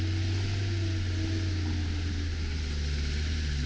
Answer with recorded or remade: recorded